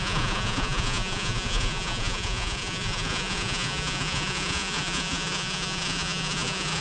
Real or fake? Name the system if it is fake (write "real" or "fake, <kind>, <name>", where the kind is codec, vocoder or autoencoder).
fake, vocoder, Vocos